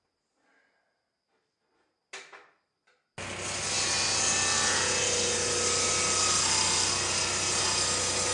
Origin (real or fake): real